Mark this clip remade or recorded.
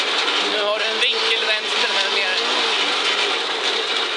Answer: recorded